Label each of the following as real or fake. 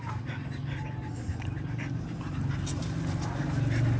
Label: real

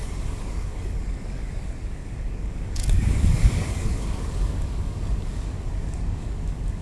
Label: fake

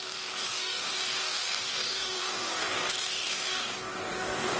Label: fake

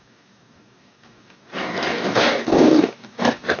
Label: fake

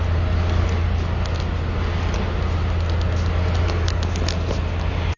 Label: real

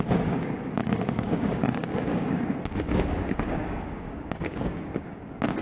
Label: fake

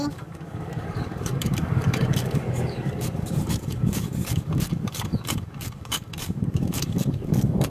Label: fake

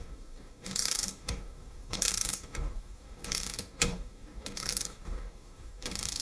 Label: fake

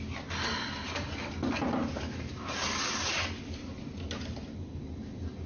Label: real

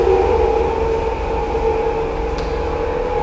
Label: real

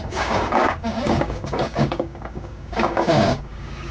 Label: fake